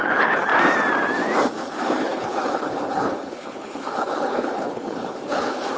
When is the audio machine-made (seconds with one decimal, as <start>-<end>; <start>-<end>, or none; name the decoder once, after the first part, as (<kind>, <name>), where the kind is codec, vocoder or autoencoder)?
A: 0.0-0.5 (codec, HILCodec); 1.6-5.8